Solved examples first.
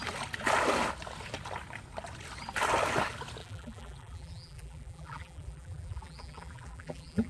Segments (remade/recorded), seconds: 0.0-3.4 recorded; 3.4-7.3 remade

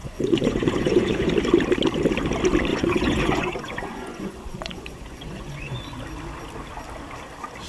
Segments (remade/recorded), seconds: 0.0-1.3 remade; 1.3-2.7 recorded; 2.7-5.8 remade; 5.8-7.7 recorded

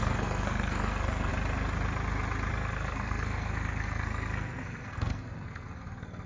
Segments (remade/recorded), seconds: 0.0-1.3 remade; 1.3-2.5 recorded; 2.5-6.3 remade